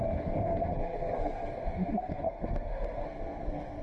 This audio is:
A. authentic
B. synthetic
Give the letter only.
B